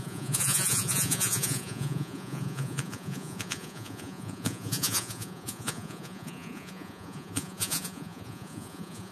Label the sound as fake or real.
fake